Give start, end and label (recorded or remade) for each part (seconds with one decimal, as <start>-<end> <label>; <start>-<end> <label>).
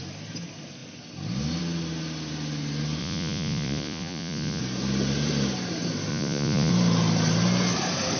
0.0-3.0 recorded; 3.0-4.6 remade; 4.6-6.1 recorded; 6.1-6.7 remade; 6.7-8.2 recorded